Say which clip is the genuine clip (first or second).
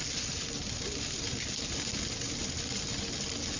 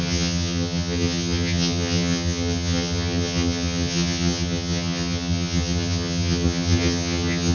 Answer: first